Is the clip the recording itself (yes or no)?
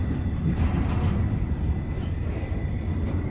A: yes